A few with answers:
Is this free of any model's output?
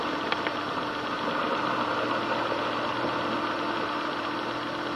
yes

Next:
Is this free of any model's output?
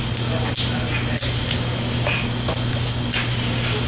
yes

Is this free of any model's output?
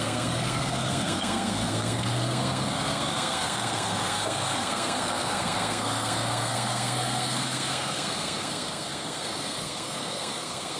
no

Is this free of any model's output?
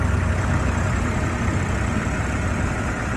yes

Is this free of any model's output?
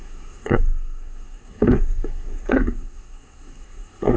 no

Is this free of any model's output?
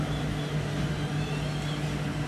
yes